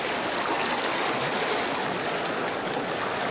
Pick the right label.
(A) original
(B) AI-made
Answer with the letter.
A